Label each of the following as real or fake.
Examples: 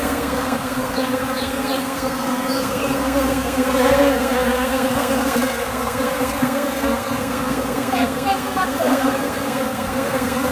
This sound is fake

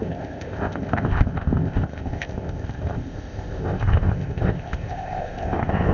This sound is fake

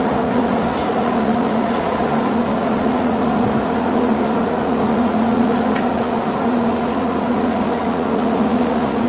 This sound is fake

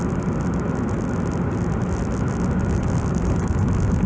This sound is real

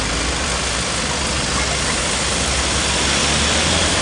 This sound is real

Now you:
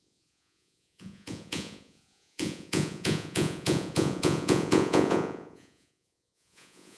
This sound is fake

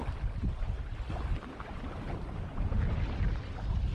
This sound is real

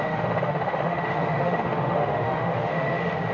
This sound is fake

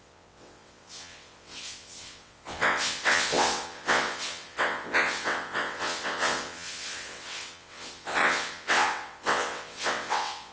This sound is fake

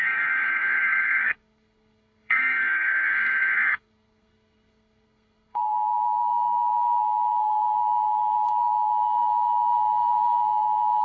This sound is fake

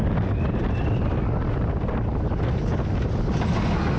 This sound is real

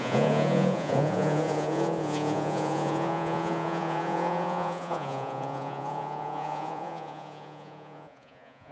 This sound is fake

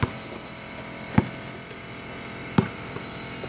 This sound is real